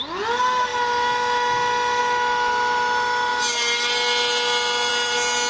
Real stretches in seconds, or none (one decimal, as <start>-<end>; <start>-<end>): 0.0-5.5